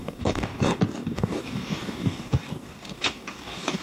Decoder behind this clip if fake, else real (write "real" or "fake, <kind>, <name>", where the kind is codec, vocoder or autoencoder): fake, codec, DAC